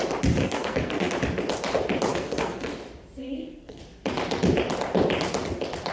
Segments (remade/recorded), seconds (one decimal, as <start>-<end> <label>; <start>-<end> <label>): 0.0-0.4 recorded; 0.4-1.1 remade; 1.1-2.1 recorded; 2.1-2.7 remade; 2.7-3.2 recorded; 3.2-3.8 remade; 3.8-5.9 recorded